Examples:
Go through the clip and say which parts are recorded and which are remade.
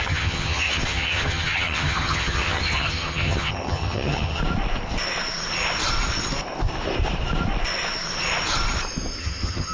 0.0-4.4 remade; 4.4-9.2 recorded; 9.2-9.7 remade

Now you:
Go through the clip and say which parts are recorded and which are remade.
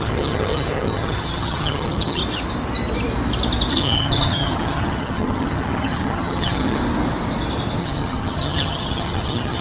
0.0-2.2 remade; 2.2-3.7 recorded; 3.7-6.8 remade; 6.8-7.8 recorded; 7.8-9.6 remade